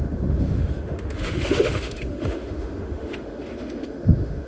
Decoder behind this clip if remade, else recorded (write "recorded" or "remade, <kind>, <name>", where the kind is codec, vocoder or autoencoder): remade, autoencoder, DAC-VAE